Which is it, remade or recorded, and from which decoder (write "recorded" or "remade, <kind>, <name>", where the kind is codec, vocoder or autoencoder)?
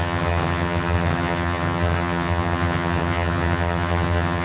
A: remade, vocoder, HiFi-GAN